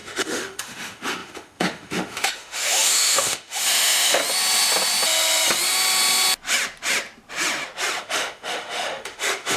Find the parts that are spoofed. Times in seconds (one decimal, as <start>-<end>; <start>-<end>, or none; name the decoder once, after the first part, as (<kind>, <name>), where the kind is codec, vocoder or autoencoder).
0.0-4.2 (autoencoder, DAC-VAE); 8.0-9.6